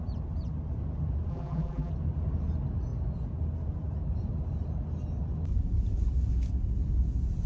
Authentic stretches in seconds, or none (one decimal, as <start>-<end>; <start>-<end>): 0.0-1.3; 1.9-7.5